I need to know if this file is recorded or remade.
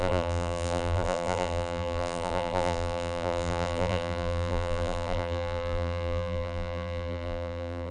remade